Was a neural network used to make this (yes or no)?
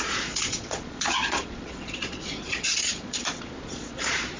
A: yes